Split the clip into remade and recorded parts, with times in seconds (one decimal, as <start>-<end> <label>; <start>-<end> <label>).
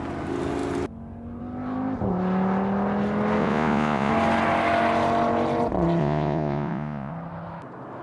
0.0-3.4 recorded; 3.4-4.1 remade; 4.1-6.0 recorded; 6.0-7.1 remade; 7.1-8.0 recorded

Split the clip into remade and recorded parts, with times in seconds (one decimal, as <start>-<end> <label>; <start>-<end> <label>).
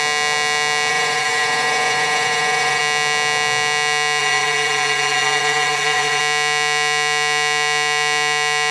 0.0-0.9 recorded; 0.9-2.8 remade; 2.8-4.2 recorded; 4.2-6.2 remade; 6.2-8.7 recorded